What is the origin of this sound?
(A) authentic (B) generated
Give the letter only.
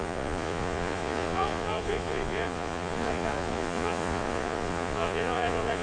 B